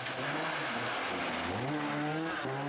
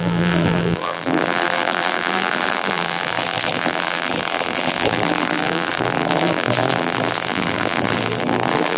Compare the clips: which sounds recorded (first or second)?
first